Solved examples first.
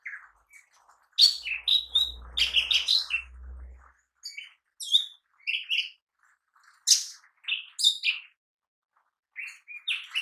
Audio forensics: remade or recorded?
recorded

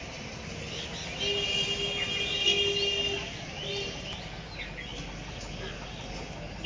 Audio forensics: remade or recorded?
recorded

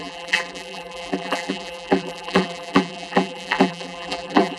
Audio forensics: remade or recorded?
remade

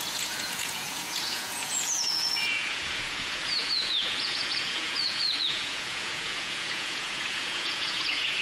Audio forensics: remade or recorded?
remade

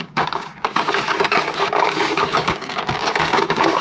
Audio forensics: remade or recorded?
remade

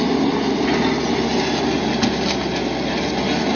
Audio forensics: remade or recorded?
recorded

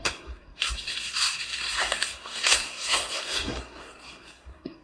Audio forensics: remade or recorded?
remade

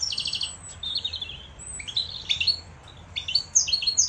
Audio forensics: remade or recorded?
recorded